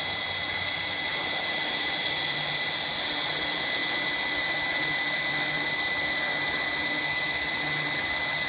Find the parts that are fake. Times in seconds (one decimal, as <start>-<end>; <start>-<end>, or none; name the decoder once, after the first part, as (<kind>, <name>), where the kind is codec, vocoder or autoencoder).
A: 1.1-2.4 (vocoder, BigVGAN v2)